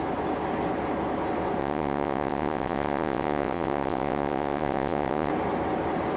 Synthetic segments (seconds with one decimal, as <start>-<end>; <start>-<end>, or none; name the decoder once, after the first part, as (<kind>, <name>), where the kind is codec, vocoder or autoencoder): 1.6-5.3 (vocoder, WaveNeXt)